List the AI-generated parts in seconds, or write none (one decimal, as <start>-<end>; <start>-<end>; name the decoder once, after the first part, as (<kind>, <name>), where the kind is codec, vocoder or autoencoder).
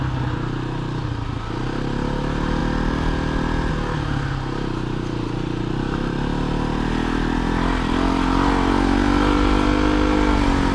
none